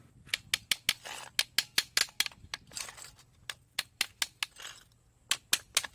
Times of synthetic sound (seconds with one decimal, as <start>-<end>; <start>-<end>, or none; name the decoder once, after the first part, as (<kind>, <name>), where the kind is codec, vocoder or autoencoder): none